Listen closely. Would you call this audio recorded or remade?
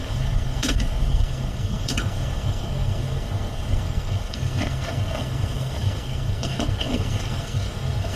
remade